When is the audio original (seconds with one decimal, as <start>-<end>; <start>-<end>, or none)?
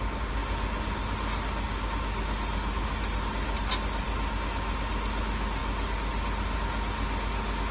0.0-7.7